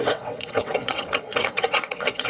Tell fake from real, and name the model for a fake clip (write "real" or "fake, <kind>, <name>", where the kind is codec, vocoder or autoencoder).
fake, vocoder, WaveNeXt